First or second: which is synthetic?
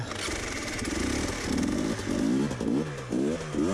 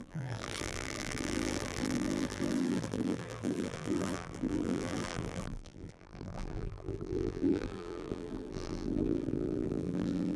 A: second